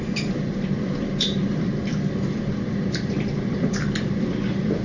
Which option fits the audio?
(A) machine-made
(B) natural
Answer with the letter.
A